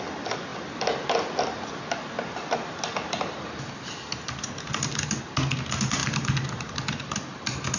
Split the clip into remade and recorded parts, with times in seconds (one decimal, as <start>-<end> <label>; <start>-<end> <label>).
0.0-6.0 recorded; 6.0-6.7 remade; 6.7-7.8 recorded